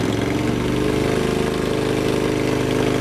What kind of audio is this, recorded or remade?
recorded